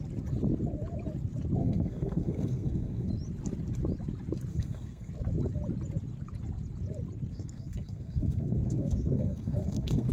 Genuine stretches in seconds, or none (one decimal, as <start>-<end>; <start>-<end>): 0.0-1.6; 3.1-4.5; 5.1-7.3